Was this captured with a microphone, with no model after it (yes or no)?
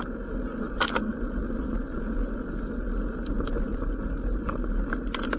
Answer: yes